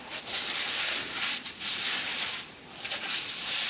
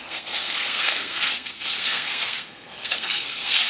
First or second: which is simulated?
second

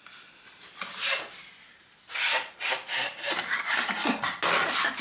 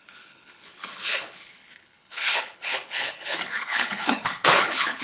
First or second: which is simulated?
second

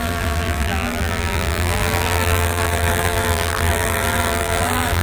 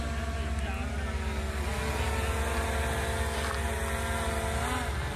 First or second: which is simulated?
first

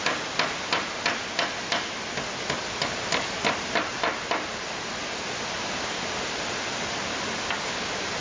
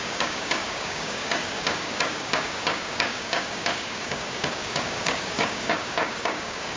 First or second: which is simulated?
second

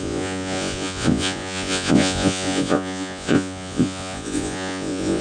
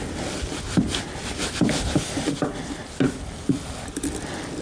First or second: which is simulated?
first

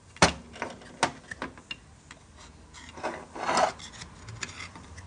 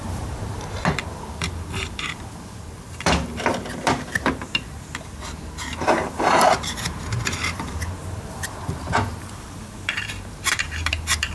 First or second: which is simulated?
second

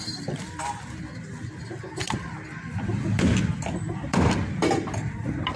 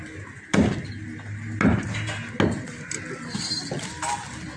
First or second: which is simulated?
first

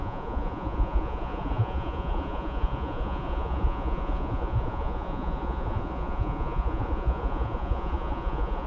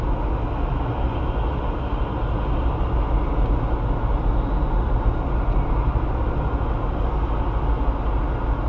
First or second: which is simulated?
first